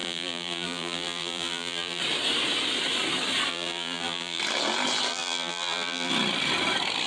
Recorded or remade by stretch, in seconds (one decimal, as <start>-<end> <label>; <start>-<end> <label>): 0.0-2.0 remade; 2.0-3.5 recorded; 3.5-4.4 remade; 4.4-5.1 recorded; 5.1-6.1 remade; 6.1-7.1 recorded